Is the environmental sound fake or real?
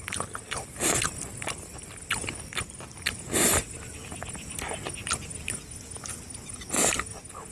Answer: real